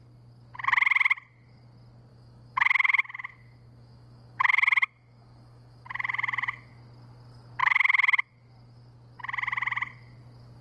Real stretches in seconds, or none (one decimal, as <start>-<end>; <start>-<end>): 0.0-2.1; 6.7-7.6; 8.3-10.6